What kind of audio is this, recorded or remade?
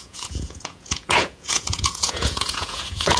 remade